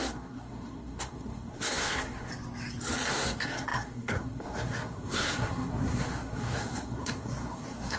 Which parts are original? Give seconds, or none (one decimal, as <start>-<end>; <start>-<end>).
2.3-3.1

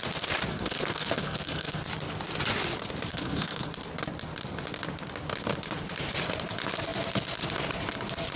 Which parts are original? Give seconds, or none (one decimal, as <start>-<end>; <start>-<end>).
0.0-0.5; 1.8-3.1; 3.7-8.4

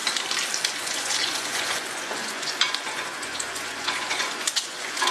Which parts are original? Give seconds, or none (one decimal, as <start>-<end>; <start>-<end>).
0.0-0.7

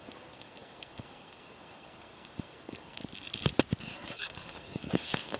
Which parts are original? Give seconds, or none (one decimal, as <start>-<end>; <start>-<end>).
3.0-3.8